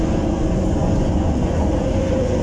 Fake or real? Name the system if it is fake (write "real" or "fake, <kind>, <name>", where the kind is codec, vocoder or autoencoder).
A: fake, vocoder, Vocos